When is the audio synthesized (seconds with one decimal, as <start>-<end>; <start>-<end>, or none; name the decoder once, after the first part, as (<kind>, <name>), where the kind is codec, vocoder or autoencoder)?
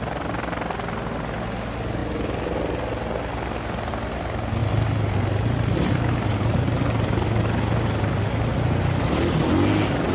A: none